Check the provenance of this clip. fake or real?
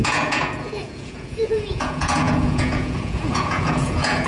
fake